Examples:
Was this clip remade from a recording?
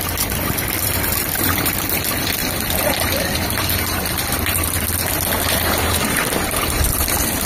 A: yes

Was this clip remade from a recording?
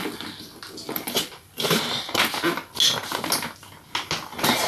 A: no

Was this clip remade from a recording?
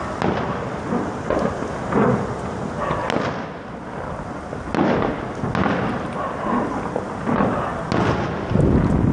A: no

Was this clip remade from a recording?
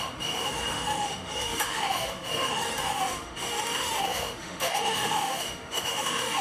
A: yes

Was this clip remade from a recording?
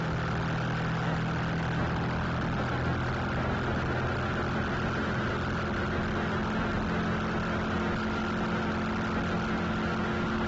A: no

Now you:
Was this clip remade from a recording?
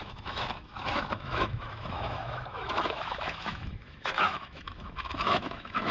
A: yes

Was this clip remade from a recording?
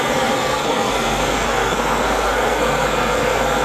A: yes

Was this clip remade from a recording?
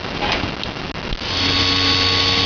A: no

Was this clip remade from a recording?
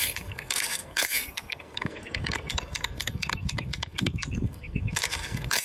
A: yes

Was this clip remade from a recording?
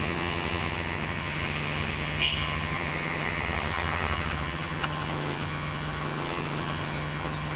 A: yes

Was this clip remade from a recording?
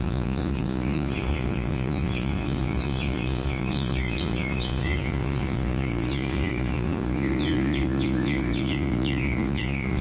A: yes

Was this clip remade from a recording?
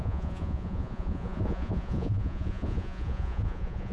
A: yes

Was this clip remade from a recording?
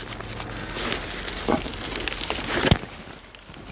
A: no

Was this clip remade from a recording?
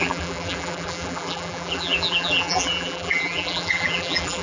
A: yes